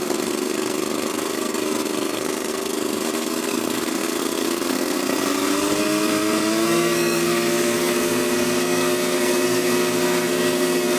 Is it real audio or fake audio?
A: fake